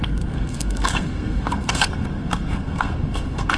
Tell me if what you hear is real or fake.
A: fake